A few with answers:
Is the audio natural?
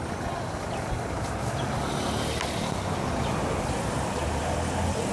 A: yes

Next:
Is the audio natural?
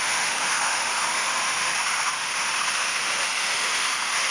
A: no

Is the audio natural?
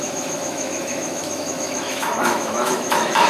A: no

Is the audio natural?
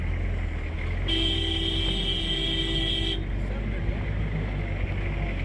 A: yes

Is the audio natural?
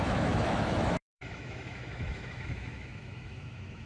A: no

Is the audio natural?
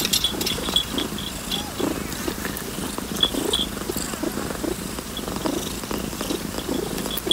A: yes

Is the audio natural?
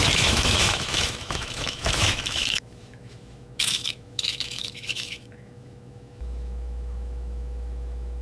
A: no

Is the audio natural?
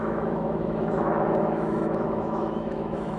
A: no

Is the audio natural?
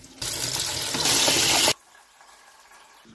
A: yes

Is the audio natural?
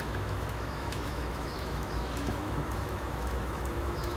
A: no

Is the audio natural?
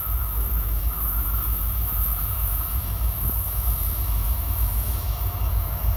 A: no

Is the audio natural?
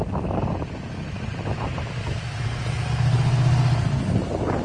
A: yes